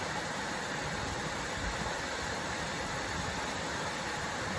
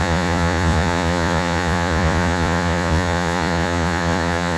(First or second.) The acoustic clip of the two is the first